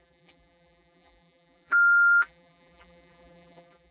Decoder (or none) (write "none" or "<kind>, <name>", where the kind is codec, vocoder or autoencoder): vocoder, BigVGAN v2